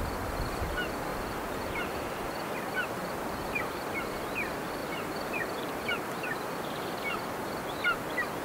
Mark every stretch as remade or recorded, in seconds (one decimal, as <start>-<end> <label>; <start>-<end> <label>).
0.0-1.1 recorded; 1.1-2.5 remade; 2.5-3.0 recorded; 3.0-3.8 remade; 3.8-4.8 recorded; 4.8-6.0 remade; 6.0-8.4 recorded